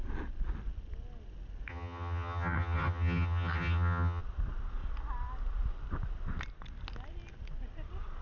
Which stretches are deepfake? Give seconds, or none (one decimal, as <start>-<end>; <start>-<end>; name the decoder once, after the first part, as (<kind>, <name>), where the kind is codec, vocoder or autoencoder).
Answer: 1.7-4.2 (vocoder, HiFi-GAN)